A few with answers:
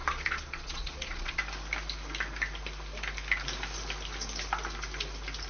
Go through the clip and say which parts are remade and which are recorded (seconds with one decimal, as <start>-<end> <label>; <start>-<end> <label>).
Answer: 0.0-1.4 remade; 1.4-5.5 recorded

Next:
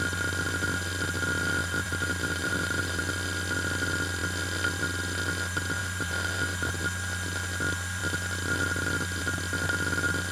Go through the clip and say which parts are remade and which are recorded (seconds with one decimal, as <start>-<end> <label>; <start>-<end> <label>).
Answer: 0.0-1.6 recorded; 1.6-3.0 remade; 3.0-5.8 recorded; 5.8-6.8 remade; 6.8-10.3 recorded

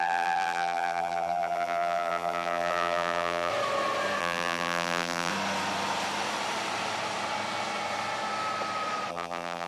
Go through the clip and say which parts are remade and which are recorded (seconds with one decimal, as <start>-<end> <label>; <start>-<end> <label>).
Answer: 0.0-3.5 remade; 3.5-4.2 recorded; 4.2-5.3 remade; 5.3-9.1 recorded; 9.1-9.7 remade

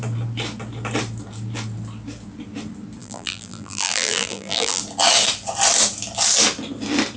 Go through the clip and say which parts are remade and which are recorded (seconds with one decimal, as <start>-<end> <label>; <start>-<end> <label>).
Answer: 0.0-3.0 recorded; 3.0-4.8 remade; 4.8-7.2 recorded

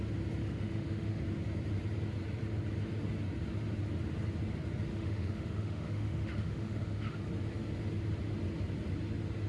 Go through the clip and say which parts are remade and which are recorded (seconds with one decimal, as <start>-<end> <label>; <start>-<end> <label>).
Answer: 0.0-0.4 recorded; 0.4-1.2 remade; 1.2-4.9 recorded; 4.9-7.2 remade; 7.2-9.5 recorded

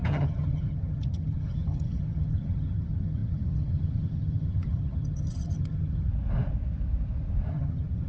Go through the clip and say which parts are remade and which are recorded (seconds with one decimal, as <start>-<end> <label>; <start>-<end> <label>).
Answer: 0.0-6.1 remade; 6.1-7.5 recorded; 7.5-8.1 remade